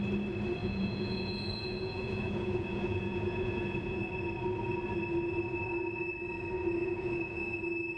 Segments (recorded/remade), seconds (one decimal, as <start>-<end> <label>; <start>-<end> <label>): 0.0-0.6 recorded; 0.6-4.0 remade; 4.0-6.8 recorded; 6.8-7.6 remade; 7.6-8.0 recorded